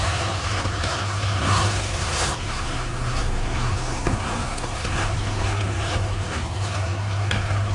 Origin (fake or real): fake